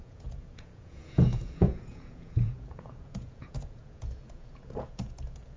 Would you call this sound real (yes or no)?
no